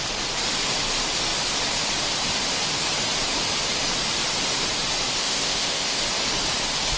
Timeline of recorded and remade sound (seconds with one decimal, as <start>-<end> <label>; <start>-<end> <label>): 0.0-5.2 recorded; 5.2-6.0 remade; 6.0-7.0 recorded